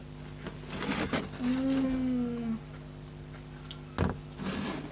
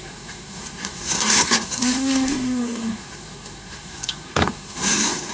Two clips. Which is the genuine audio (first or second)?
first